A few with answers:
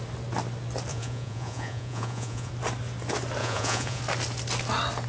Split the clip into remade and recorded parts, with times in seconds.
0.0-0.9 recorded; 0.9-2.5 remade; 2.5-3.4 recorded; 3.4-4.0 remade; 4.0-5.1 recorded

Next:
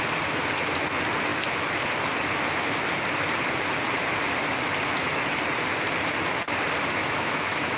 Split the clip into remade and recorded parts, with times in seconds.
0.0-7.0 recorded; 7.0-7.8 remade

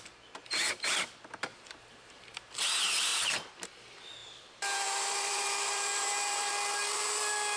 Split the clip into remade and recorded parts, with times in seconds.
0.0-1.5 recorded; 1.5-2.7 remade; 2.7-3.1 recorded; 3.1-3.7 remade; 3.7-4.2 recorded; 4.2-6.5 remade; 6.5-7.6 recorded

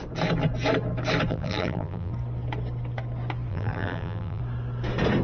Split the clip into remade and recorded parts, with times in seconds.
0.0-1.3 recorded; 1.3-2.1 remade; 2.1-3.5 recorded; 3.5-4.4 remade; 4.4-5.2 recorded